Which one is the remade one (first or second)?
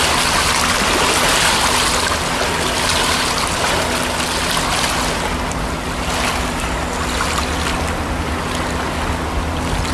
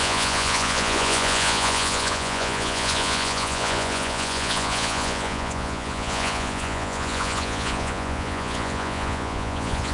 second